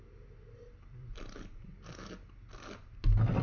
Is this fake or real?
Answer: real